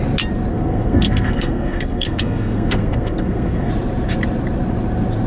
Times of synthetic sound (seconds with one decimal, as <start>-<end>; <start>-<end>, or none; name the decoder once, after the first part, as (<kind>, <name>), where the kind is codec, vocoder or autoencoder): 0.5-3.7 (codec, SNAC)